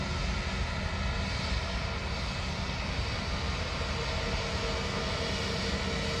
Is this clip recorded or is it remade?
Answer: recorded